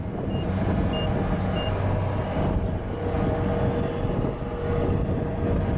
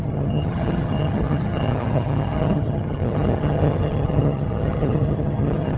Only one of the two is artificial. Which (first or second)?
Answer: second